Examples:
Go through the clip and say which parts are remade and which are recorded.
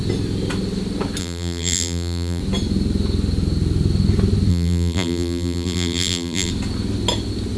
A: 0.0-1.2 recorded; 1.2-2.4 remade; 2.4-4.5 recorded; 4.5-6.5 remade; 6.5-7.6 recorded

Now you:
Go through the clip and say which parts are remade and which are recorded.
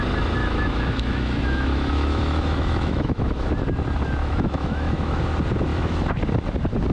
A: 0.0-0.4 recorded; 0.4-3.5 remade; 3.5-4.2 recorded; 4.2-5.2 remade; 5.2-5.7 recorded; 5.7-6.2 remade; 6.2-6.9 recorded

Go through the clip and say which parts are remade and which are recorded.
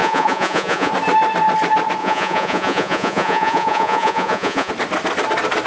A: 0.0-0.9 remade; 0.9-2.0 recorded; 2.0-4.7 remade; 4.7-5.7 recorded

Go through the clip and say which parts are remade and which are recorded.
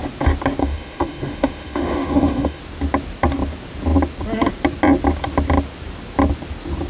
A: 0.0-0.6 recorded; 0.6-2.6 remade; 2.6-6.9 recorded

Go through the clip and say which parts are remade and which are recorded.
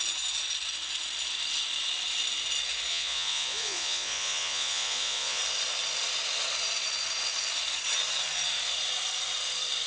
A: 0.0-2.9 recorded; 2.9-5.4 remade; 5.4-9.9 recorded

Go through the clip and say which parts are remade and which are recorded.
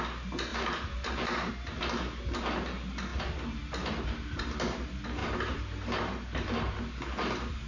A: 0.0-0.5 recorded; 0.5-1.5 remade; 1.5-3.1 recorded; 3.1-4.4 remade; 4.4-5.2 recorded; 5.2-6.0 remade; 6.0-7.7 recorded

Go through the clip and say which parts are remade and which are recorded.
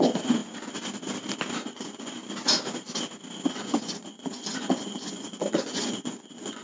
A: 0.0-0.4 remade; 0.4-1.6 recorded; 1.6-2.2 remade; 2.2-3.5 recorded; 3.5-6.6 remade